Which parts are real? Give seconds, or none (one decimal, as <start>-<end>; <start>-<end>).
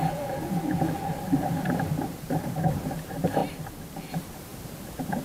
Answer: 0.0-1.5; 3.4-4.1